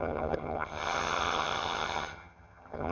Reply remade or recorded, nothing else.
remade